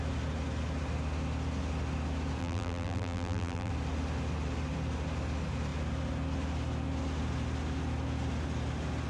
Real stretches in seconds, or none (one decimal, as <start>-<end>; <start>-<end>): 0.0-2.4; 3.7-9.1